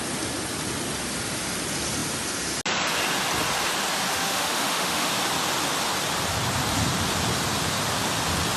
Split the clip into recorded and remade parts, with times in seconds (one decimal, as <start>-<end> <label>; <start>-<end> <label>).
0.0-4.1 recorded; 4.1-5.1 remade; 5.1-8.6 recorded